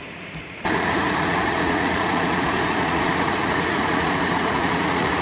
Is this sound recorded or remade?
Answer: remade